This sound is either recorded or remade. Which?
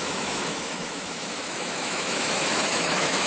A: remade